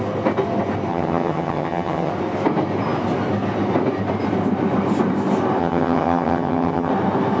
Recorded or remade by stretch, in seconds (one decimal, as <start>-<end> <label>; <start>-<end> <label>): 0.0-0.9 recorded; 0.9-2.1 remade; 2.1-5.6 recorded; 5.6-6.9 remade; 6.9-7.4 recorded